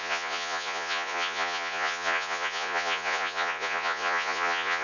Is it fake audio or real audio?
fake